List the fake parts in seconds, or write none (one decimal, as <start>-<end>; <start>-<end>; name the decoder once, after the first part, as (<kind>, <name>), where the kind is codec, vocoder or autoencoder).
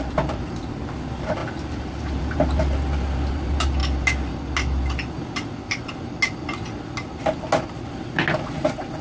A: none